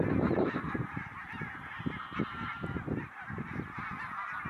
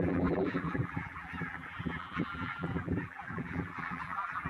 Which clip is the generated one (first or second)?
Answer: second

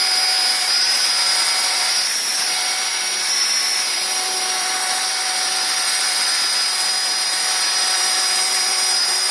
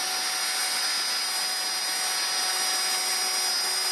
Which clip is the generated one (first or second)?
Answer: first